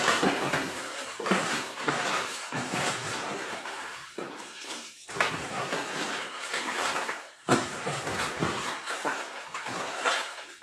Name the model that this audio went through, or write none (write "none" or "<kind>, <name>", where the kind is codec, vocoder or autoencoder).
codec, SNAC